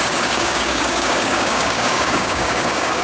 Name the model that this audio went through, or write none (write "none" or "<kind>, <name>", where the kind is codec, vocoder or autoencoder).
codec, DAC